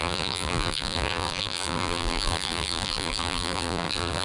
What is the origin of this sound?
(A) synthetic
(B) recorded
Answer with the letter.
A